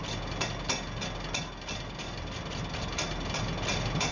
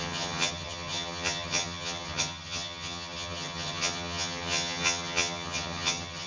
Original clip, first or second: first